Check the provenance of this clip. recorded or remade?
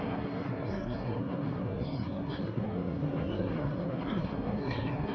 remade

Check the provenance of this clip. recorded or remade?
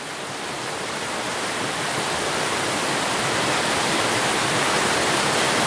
recorded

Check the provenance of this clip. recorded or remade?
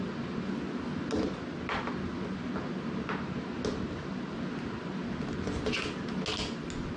recorded